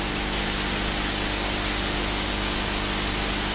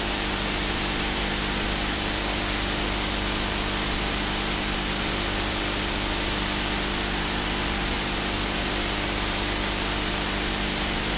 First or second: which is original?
first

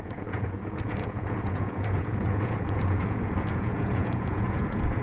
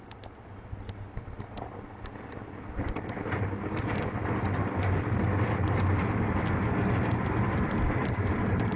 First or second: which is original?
second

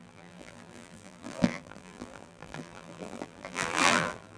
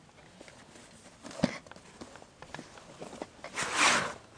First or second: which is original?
second